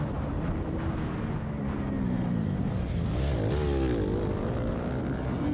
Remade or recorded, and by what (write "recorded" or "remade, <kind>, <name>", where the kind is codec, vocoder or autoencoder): recorded